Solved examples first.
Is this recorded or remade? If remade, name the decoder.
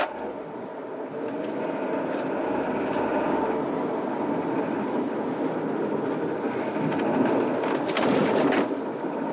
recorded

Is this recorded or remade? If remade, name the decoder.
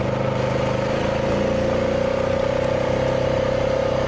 recorded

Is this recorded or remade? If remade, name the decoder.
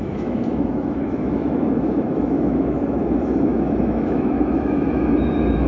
remade, autoencoder, DAC-VAE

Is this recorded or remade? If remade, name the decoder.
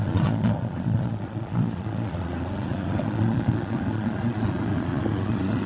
remade, vocoder, Vocos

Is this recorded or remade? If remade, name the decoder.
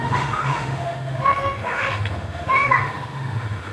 remade, autoencoder, DAC-VAE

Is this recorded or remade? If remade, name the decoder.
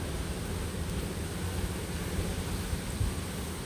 recorded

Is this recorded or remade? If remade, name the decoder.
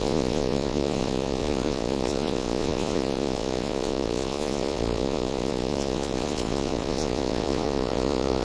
remade, vocoder, Vocos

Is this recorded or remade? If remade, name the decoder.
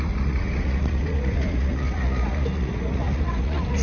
remade, vocoder, Vocos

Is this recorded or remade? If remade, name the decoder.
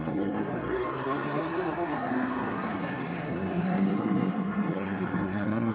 remade, codec, SNAC